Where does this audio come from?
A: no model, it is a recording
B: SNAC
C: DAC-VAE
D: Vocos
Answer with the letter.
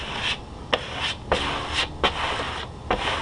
A